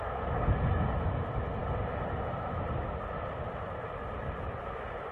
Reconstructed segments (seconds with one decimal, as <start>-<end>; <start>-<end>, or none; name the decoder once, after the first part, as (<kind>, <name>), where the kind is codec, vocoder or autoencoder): none